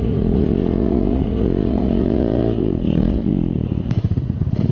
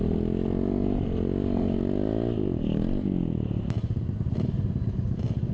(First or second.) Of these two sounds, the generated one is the first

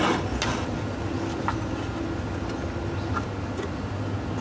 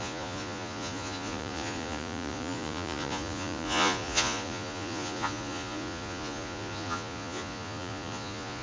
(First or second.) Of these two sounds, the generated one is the second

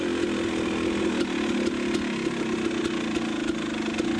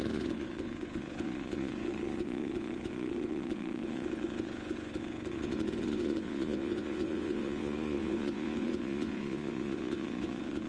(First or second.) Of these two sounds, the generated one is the second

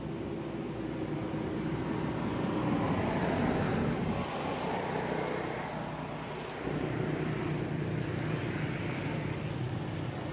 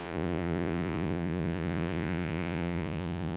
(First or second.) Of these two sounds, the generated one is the second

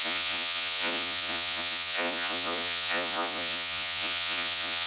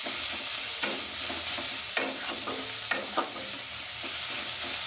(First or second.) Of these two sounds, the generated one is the first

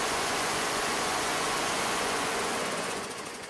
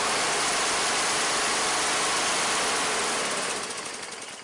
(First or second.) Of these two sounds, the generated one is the first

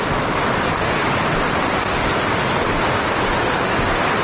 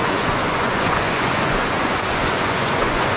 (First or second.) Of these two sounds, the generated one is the second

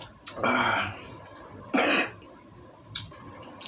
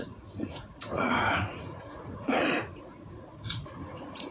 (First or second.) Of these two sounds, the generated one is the second